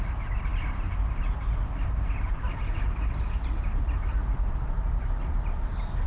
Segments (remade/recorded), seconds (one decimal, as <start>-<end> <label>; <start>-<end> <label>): 0.0-6.1 recorded